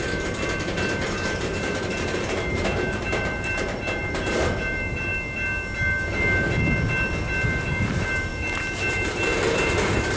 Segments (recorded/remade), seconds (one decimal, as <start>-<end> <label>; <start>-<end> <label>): 0.0-5.1 remade; 5.1-7.8 recorded; 7.8-8.3 remade; 8.3-8.9 recorded; 8.9-10.2 remade

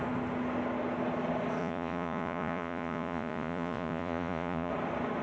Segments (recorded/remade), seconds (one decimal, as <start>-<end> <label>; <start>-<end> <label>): 0.0-1.6 recorded; 1.6-4.7 remade; 4.7-5.2 recorded

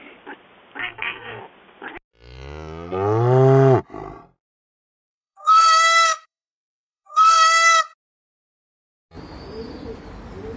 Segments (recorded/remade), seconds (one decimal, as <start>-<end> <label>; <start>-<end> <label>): 0.0-0.8 recorded; 0.8-1.4 remade; 1.4-4.6 recorded; 4.6-7.8 remade; 7.8-10.6 recorded

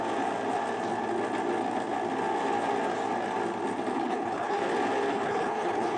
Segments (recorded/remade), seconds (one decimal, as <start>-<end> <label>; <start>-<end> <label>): 0.0-3.9 recorded; 3.9-4.6 remade; 4.6-5.1 recorded; 5.1-6.0 remade

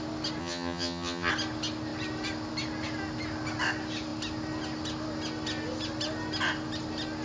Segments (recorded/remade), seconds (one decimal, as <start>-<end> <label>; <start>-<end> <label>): 0.0-0.4 recorded; 0.4-1.3 remade; 1.3-7.2 recorded

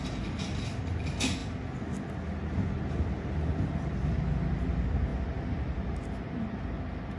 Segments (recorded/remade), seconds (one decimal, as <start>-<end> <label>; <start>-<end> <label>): 0.0-7.2 recorded

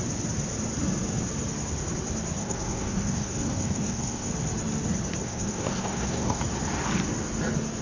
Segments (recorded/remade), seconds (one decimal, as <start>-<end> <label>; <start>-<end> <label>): 0.0-2.4 recorded; 2.4-4.3 remade; 4.3-5.2 recorded; 5.2-6.4 remade; 6.4-7.8 recorded

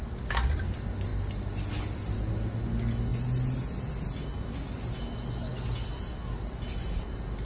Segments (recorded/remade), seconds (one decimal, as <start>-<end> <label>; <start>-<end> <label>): 0.0-7.5 recorded